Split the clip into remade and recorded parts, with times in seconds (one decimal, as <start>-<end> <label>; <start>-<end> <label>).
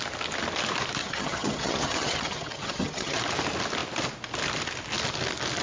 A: 0.0-1.0 recorded; 1.0-3.2 remade; 3.2-5.6 recorded